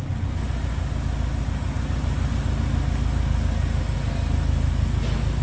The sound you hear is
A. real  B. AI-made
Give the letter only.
A